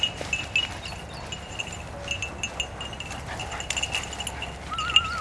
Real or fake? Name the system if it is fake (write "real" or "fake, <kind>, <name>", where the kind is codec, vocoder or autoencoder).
real